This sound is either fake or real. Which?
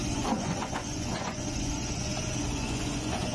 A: fake